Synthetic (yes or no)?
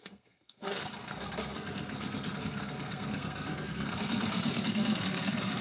yes